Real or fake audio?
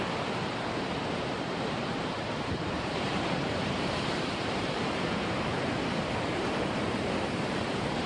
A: fake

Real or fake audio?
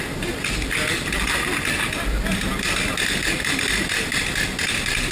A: real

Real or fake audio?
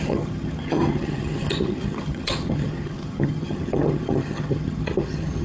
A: fake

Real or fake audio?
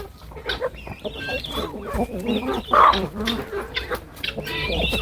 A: fake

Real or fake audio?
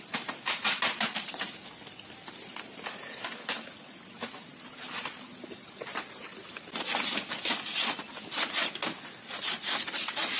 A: real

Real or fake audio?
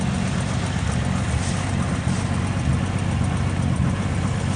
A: real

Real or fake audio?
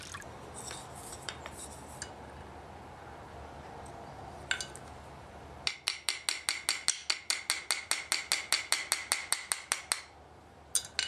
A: real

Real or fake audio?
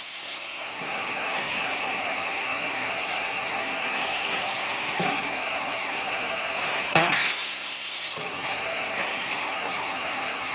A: fake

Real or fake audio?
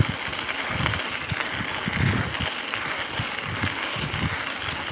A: real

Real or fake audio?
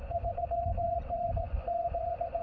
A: fake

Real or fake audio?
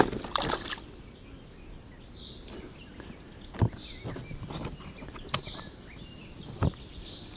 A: real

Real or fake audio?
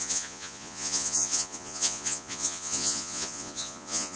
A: fake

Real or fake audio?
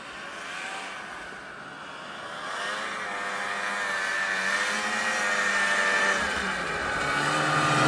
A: real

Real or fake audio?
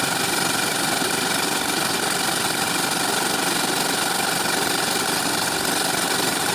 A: real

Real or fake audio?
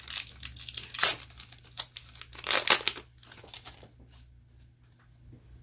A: real